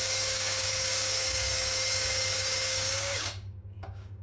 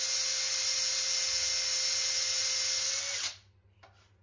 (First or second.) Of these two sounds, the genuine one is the second